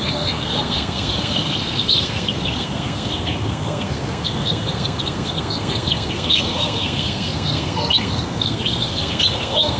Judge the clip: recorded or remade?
remade